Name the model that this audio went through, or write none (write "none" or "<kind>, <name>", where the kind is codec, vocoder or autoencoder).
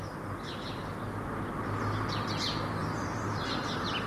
none